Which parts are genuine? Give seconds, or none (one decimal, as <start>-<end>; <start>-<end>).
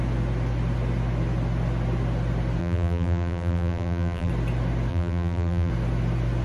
0.0-2.6; 4.3-4.9; 5.7-6.4